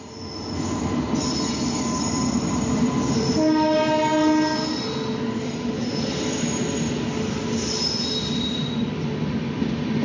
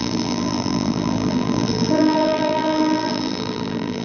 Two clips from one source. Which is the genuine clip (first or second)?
first